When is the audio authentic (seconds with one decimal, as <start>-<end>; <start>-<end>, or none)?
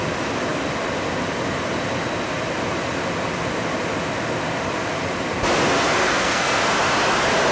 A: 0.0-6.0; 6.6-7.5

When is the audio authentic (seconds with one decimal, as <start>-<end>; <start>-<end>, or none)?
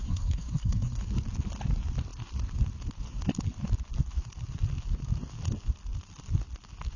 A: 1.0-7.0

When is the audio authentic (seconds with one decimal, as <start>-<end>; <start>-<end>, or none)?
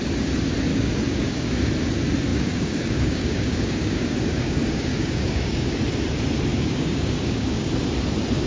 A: 0.0-0.7; 1.7-2.3; 5.8-6.5; 7.7-8.5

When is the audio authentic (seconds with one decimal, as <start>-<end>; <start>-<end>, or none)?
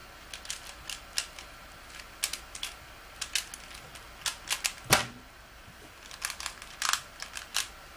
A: 0.0-8.0